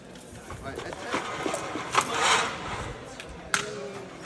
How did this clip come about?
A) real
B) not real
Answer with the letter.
A